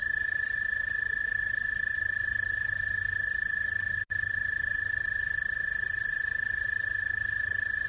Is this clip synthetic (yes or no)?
no